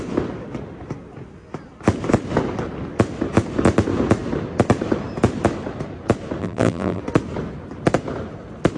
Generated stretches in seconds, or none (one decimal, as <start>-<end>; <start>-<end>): 6.4-7.0